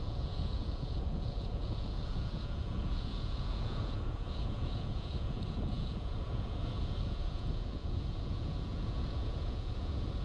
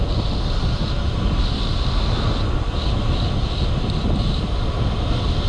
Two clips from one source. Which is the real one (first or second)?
second